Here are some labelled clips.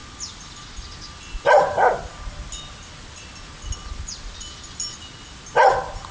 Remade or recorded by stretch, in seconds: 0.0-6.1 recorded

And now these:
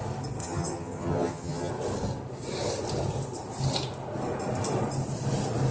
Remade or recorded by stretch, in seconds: 0.0-0.4 recorded; 0.4-1.7 remade; 1.7-5.7 recorded

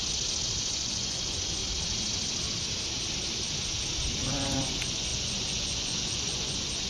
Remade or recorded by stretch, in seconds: 0.0-0.5 recorded; 0.5-1.6 remade; 1.6-4.3 recorded; 4.3-6.9 remade

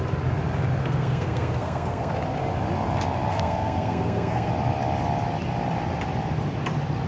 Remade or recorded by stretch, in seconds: 0.0-0.8 recorded; 0.8-2.1 remade; 2.1-3.3 recorded; 3.3-4.5 remade; 4.5-7.1 recorded

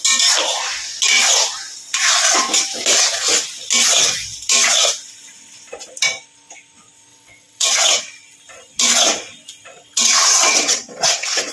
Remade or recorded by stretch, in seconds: 0.0-7.1 recorded; 7.1-8.0 remade; 8.0-9.7 recorded; 9.7-11.5 remade

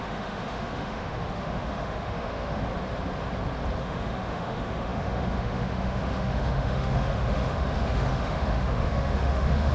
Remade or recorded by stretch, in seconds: 0.0-2.6 remade; 2.6-3.8 recorded; 3.8-9.7 remade